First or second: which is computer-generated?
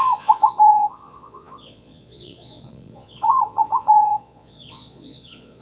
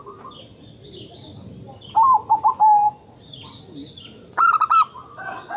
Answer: first